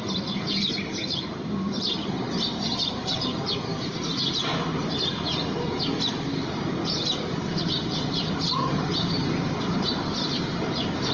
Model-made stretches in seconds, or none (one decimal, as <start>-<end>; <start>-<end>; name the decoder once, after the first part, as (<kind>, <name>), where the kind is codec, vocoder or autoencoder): 0.0-4.5 (vocoder, BigVGAN v2); 6.4-11.1